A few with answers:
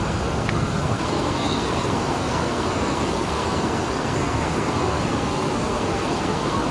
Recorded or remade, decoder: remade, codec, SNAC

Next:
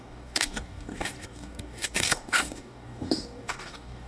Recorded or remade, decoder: remade, codec, DAC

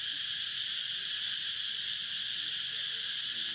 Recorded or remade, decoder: recorded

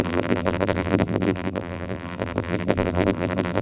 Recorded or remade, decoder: remade, vocoder, BigVGAN v2